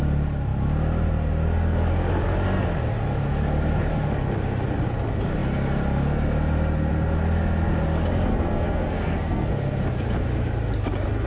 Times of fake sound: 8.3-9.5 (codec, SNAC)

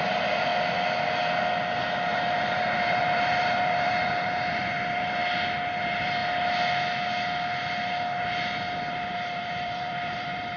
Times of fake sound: 0.0-0.5 (vocoder, BigVGAN v2); 2.1-5.2; 5.8-6.2; 8.9-10.6

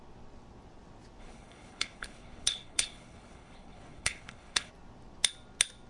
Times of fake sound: 1.2-4.7 (codec, HILCodec)

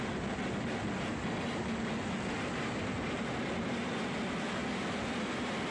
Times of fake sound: none

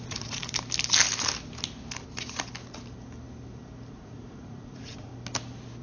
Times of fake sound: 0.0-0.4 (vocoder, Vocos); 3.9-5.1

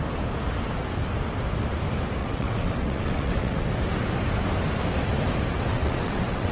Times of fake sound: 2.2-3.7 (vocoder, WaveNeXt); 5.7-6.5

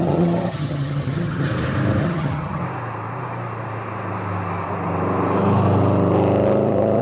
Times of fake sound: 0.0-1.5 (vocoder, HiFi-GAN); 2.0-2.6